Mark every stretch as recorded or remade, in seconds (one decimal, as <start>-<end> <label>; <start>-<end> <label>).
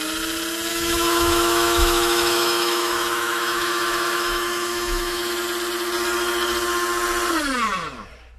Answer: 0.0-0.7 recorded; 0.7-5.3 remade; 5.3-8.4 recorded